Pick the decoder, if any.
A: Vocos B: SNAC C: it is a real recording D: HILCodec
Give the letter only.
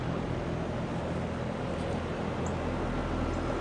C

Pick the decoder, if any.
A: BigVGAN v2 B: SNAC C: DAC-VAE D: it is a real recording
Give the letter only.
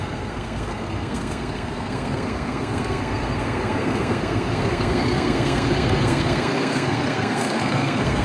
B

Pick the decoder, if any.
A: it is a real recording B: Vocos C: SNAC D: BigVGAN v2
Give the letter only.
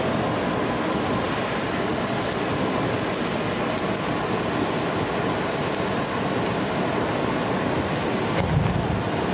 A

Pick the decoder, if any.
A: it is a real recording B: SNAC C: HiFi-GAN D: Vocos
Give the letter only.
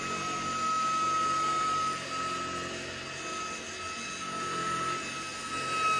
A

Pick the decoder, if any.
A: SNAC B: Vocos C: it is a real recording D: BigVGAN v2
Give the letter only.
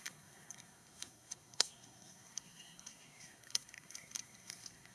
A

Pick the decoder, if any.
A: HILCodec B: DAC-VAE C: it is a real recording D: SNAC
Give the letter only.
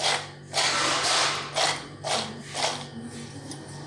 C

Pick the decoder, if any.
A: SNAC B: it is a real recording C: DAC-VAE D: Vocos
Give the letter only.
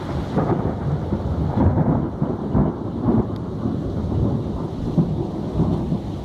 B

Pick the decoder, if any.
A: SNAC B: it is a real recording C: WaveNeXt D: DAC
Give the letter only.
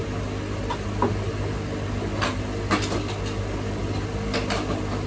B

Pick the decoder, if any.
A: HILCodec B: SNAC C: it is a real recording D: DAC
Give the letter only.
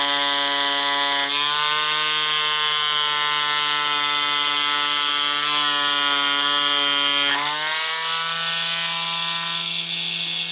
C